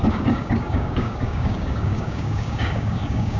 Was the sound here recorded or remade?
remade